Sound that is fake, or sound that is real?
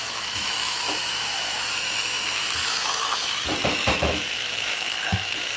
fake